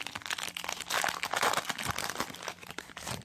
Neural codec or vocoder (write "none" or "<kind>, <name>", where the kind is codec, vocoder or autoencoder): none